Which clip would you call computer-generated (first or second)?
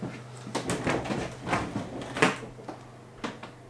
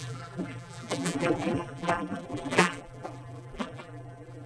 second